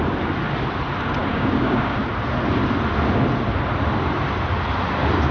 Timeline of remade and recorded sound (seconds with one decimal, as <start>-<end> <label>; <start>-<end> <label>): 0.0-1.2 recorded; 1.2-2.0 remade; 2.0-5.3 recorded